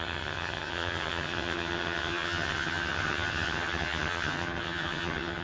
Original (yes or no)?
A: no